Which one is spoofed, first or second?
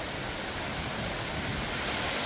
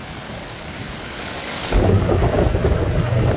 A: second